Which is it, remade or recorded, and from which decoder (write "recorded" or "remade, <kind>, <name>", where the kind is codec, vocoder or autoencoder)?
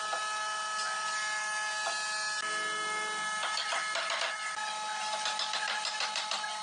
recorded